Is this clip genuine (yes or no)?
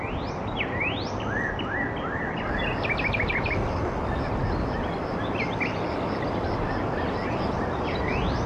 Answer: yes